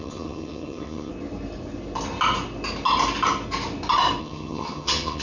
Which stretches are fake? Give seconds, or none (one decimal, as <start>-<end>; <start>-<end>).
0.0-1.1; 4.2-5.2